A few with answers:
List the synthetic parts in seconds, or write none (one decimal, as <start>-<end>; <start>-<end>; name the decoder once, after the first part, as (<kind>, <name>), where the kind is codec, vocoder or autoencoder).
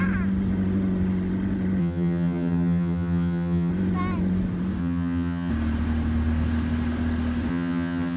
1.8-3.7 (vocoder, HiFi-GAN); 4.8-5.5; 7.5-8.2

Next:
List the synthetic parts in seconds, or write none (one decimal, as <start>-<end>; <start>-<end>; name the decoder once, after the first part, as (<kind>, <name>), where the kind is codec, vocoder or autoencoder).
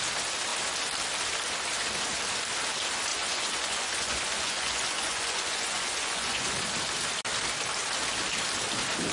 3.1-6.5 (vocoder, Vocos)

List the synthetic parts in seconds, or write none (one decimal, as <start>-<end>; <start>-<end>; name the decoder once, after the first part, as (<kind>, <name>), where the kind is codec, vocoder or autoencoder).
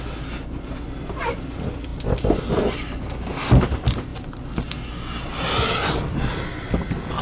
none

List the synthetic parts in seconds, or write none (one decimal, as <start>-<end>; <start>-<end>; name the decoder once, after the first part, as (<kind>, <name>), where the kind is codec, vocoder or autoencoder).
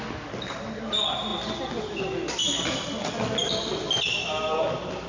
none